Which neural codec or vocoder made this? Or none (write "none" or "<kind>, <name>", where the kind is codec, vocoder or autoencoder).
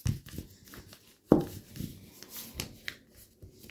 none